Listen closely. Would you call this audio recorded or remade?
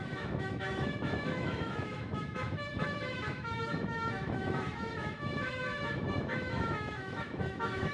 remade